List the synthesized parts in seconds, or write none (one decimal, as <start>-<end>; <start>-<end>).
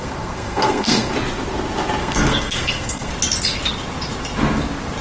0.0-1.1; 2.0-3.1